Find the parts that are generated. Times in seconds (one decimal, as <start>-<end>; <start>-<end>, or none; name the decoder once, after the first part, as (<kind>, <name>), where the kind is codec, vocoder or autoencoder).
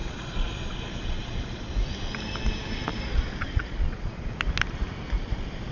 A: 0.0-1.7 (vocoder, Vocos); 2.9-4.3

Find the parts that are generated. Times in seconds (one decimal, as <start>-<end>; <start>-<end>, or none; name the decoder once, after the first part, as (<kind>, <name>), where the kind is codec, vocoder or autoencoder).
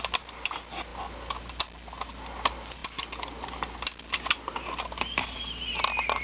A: none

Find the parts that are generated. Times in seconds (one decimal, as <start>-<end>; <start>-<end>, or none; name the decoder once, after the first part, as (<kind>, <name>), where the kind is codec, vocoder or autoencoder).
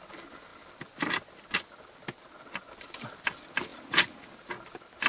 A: none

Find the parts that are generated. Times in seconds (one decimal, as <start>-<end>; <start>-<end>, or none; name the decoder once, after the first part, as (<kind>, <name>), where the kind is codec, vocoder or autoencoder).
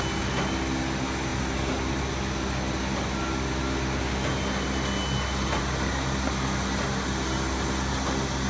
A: none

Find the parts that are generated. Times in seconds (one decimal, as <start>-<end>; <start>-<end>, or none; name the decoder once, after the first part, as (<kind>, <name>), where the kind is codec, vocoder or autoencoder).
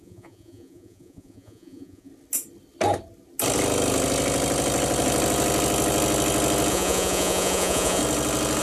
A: 0.0-2.1 (vocoder, Vocos); 6.7-8.0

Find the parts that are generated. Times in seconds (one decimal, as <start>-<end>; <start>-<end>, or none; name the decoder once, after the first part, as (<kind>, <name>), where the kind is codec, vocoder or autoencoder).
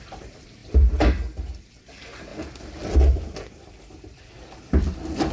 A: 0.0-0.6 (vocoder, BigVGAN v2); 1.6-2.3; 2.9-5.3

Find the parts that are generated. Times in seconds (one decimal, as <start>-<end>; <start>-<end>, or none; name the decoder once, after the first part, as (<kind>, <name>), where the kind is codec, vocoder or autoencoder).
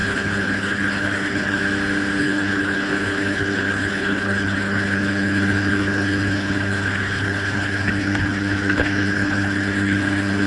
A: 0.0-1.6 (codec, HILCodec); 2.2-10.5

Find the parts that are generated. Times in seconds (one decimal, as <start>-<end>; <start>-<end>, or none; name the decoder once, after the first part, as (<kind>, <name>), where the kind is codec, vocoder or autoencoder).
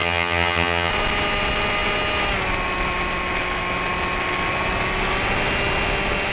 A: 0.0-0.9 (vocoder, HiFi-GAN)